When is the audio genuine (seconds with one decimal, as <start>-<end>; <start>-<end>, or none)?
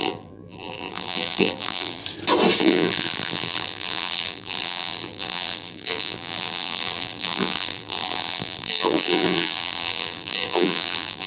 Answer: 2.0-2.6